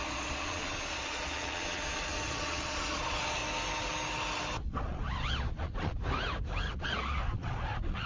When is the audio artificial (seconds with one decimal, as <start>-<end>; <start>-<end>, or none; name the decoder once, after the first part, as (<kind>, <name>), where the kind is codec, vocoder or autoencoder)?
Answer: 0.0-3.4 (vocoder, Vocos); 4.6-6.0; 6.7-8.1